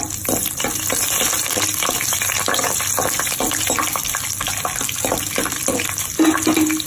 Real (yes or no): yes